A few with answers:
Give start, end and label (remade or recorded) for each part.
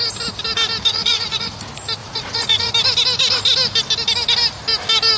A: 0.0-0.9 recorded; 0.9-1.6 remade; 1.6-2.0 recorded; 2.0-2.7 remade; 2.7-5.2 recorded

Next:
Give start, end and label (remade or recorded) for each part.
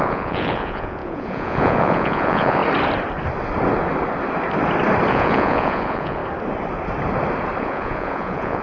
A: 0.0-2.6 remade; 2.6-5.1 recorded; 5.1-6.2 remade; 6.2-7.6 recorded; 7.6-8.6 remade